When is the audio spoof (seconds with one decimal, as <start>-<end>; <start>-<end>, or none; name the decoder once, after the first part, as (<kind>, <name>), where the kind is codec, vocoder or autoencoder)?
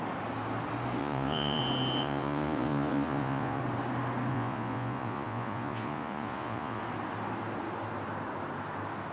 1.0-1.6 (vocoder, Vocos); 2.0-3.6; 4.3-6.8